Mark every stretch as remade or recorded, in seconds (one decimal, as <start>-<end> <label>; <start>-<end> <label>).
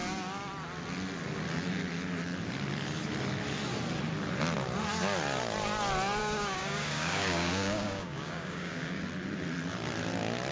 0.0-6.2 recorded; 6.2-9.0 remade; 9.0-10.5 recorded